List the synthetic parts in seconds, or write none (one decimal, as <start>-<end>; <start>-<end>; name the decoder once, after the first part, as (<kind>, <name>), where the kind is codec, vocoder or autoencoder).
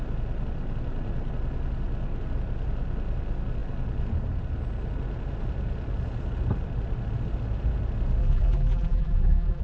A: 8.2-9.6 (vocoder, BigVGAN v2)